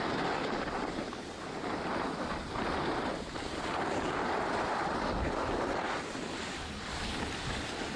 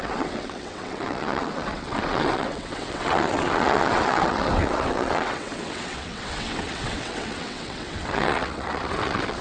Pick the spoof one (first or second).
second